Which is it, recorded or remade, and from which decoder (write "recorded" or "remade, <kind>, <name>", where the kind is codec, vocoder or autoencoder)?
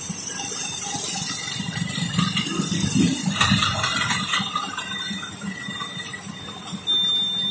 recorded